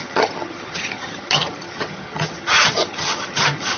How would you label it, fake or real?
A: fake